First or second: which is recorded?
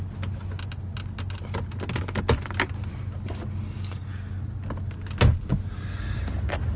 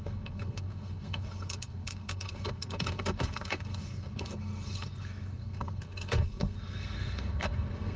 first